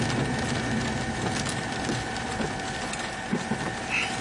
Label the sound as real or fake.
real